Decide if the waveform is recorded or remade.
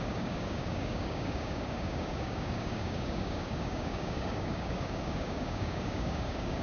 remade